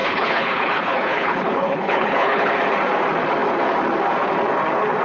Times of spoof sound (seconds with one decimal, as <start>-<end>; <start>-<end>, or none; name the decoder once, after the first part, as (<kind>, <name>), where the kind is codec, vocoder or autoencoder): 0.0-2.5 (codec, HILCodec)